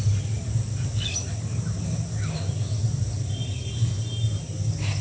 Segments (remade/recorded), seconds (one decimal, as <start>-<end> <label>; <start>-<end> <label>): 0.0-5.0 recorded